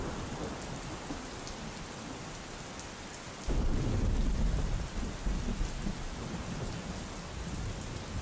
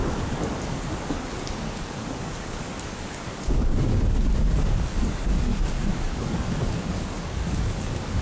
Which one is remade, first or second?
second